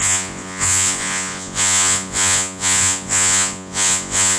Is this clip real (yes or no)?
no